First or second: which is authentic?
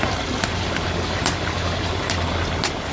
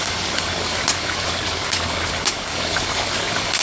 first